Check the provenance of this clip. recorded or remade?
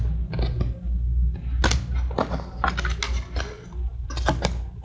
recorded